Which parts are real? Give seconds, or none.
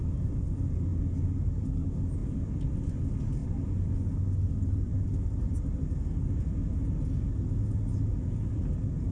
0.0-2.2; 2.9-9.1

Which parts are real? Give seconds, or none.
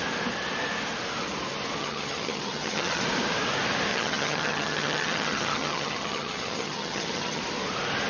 0.0-1.8; 3.0-3.9; 7.4-8.1